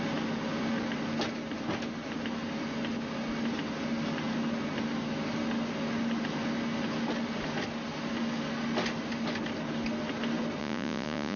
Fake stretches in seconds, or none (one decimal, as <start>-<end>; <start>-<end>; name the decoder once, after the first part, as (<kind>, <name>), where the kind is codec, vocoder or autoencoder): 10.6-11.4 (vocoder, Vocos)